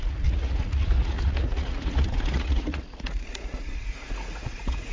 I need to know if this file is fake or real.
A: fake